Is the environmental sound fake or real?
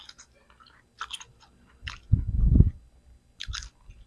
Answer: real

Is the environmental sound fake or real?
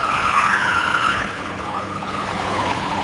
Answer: fake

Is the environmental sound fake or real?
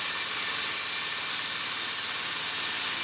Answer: real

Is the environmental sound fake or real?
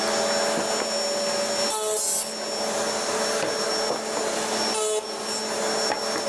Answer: real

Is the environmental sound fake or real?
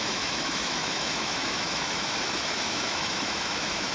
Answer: fake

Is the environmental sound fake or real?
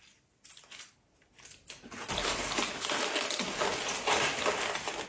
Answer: real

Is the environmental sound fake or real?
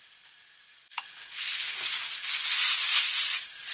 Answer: real